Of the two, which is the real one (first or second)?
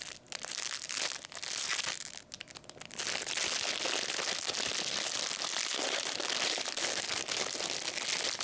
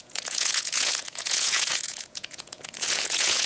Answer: first